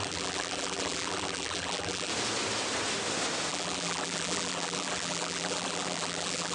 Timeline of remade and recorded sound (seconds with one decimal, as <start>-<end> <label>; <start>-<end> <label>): 0.0-2.1 remade; 2.1-3.5 recorded; 3.5-6.5 remade